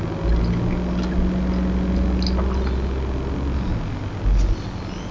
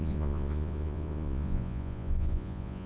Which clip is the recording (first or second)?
first